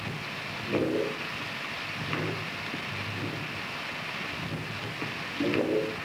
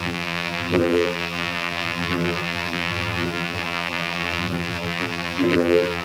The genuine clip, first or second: first